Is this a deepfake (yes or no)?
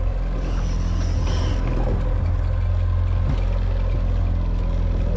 no